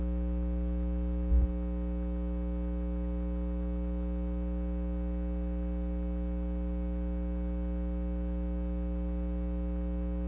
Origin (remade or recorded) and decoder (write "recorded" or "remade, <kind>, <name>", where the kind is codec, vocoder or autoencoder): recorded